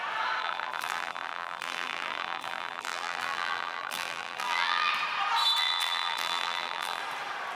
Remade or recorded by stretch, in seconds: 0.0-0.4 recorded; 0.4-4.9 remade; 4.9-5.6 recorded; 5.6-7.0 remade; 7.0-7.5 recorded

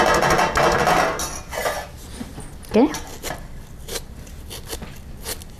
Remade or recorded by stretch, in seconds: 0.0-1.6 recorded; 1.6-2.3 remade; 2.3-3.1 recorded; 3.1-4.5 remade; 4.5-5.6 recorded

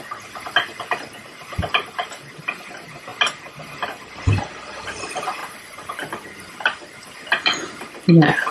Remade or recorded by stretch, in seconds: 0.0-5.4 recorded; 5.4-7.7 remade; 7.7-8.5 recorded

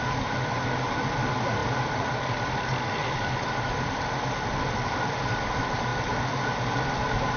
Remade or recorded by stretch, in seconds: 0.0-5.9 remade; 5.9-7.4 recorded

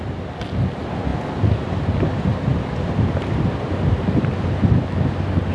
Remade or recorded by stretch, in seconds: 0.0-5.5 recorded

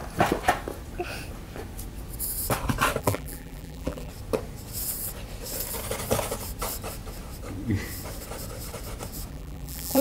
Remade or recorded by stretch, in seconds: 0.0-3.0 recorded; 3.0-4.1 remade; 4.1-9.3 recorded; 9.3-10.0 remade